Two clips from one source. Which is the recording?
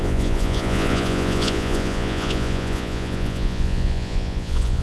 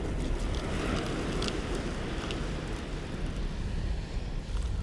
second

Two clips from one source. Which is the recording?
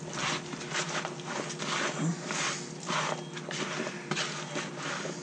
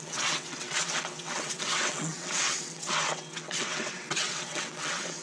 first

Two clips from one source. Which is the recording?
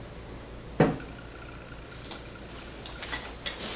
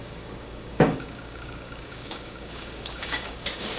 first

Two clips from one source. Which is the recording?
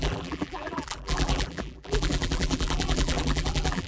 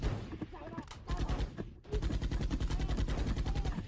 second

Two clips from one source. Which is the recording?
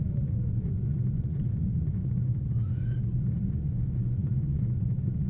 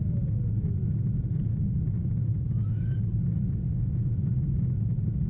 second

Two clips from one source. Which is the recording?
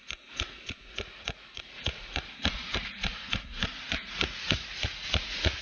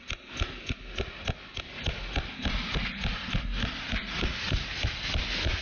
second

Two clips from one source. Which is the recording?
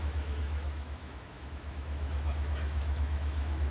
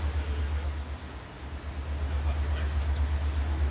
second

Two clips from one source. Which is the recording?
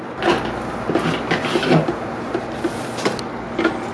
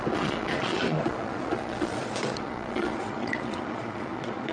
first